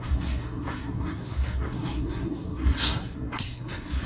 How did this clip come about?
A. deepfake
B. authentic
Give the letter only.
A